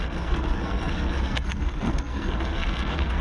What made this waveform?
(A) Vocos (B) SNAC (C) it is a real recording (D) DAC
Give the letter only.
B